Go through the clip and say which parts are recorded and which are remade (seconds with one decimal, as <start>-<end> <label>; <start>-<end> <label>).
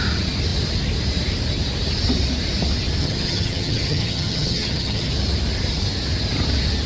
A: 0.0-3.0 recorded; 3.0-5.1 remade; 5.1-6.9 recorded